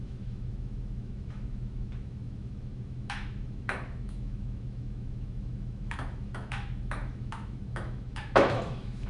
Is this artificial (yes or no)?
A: yes